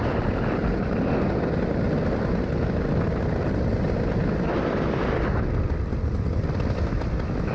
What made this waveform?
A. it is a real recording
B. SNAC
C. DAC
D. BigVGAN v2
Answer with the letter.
A